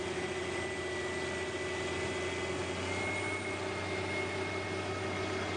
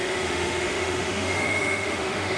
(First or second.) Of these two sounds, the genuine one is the first